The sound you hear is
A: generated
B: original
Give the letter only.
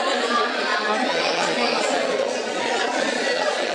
A